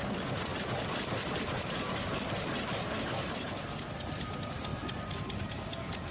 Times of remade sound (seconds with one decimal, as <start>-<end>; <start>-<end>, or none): none